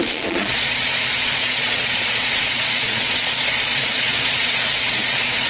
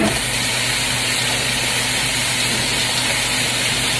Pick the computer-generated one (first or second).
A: first